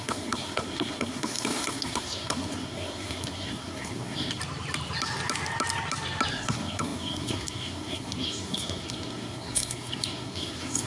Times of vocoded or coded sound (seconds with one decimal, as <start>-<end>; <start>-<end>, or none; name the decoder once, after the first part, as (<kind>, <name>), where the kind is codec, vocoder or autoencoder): 0.0-4.4 (codec, SNAC); 6.3-10.9